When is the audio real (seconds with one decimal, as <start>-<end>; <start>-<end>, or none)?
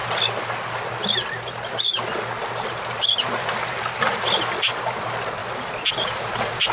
0.0-6.7